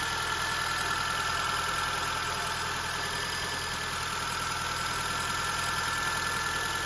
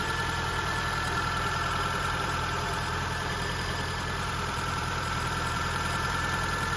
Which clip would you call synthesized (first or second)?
second